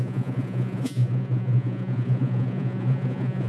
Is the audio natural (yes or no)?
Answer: no